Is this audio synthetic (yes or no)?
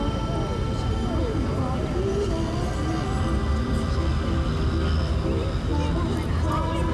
no